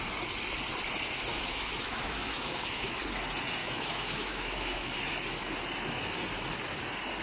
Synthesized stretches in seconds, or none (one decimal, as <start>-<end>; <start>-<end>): 1.3-3.0; 3.6-5.0